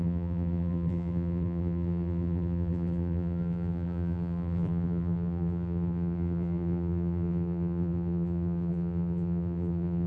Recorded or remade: remade